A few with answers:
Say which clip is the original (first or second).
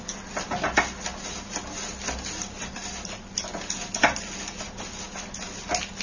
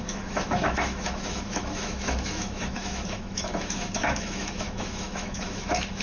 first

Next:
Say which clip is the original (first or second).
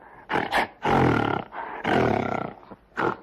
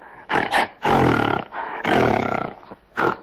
first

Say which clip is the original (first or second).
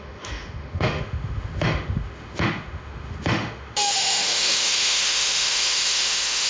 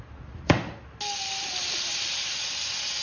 second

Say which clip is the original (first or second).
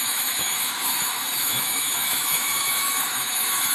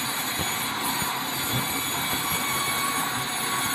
second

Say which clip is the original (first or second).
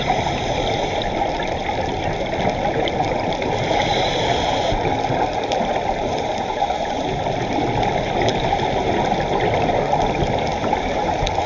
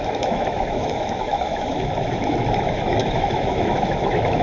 first